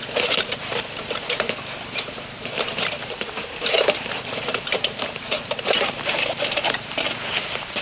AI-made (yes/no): yes